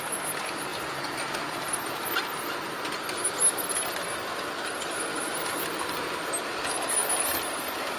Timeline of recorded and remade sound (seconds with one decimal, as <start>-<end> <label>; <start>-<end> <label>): 0.0-5.1 recorded; 5.1-6.3 remade; 6.3-7.0 recorded; 7.0-8.0 remade